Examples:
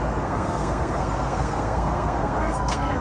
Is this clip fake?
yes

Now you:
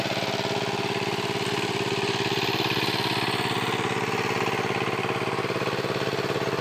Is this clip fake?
no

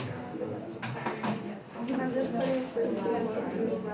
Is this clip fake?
no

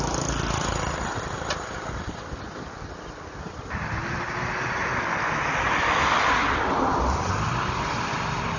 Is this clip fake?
no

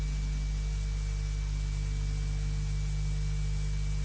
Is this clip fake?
no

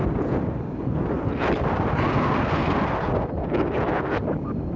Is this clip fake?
yes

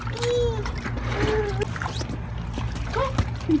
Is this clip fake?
no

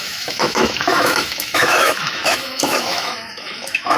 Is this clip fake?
yes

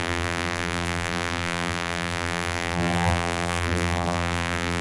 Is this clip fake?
yes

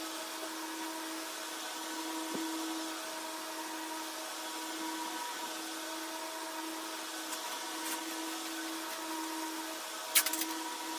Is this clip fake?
no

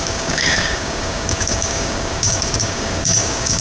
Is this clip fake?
yes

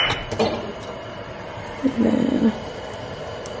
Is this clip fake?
yes